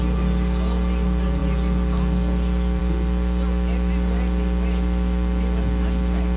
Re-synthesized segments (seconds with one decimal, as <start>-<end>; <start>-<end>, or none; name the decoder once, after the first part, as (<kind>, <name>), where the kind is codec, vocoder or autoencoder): none